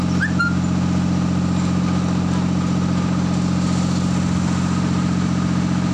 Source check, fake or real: real